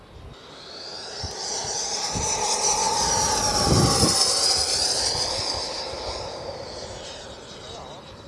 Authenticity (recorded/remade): recorded